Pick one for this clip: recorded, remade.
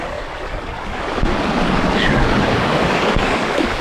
remade